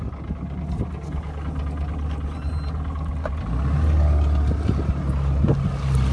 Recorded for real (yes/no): yes